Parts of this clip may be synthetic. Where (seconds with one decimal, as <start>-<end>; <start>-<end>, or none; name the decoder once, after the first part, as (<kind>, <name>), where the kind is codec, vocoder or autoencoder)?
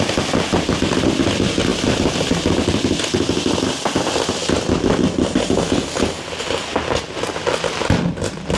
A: none